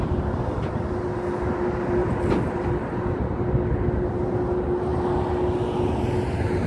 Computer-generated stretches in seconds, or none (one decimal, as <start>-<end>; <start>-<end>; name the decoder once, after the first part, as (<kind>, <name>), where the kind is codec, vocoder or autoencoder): 2.0-2.9 (vocoder, BigVGAN v2)